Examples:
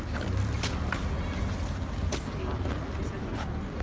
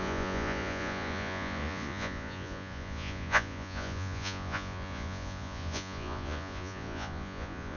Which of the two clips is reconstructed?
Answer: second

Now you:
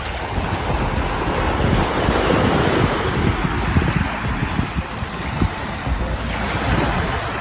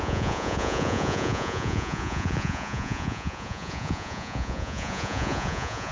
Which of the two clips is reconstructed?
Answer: second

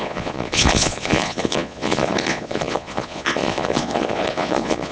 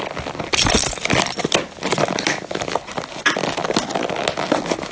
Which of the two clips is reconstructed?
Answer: first